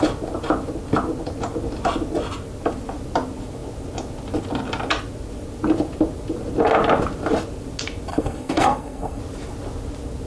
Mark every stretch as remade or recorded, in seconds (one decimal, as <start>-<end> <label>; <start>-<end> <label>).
0.0-8.1 recorded; 8.1-9.2 remade; 9.2-10.3 recorded